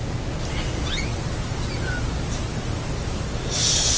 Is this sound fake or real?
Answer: real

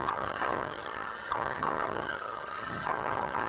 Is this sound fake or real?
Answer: fake